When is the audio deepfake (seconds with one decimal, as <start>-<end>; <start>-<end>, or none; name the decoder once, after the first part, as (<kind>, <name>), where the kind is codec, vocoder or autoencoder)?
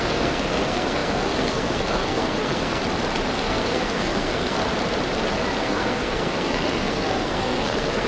0.0-2.8 (codec, SNAC); 3.3-4.6; 5.6-8.1